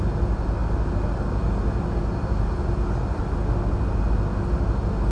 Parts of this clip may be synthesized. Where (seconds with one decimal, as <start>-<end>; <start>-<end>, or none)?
none